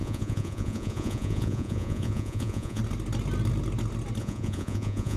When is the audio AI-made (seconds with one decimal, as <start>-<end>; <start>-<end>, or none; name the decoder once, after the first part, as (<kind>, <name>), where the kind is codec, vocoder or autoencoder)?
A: 0.0-2.8 (vocoder, Vocos); 4.2-5.2